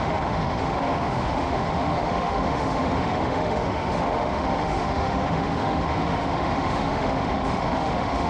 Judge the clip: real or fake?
fake